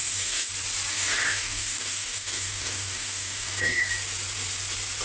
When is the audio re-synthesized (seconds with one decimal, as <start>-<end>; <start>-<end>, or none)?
0.0-0.5; 0.9-3.9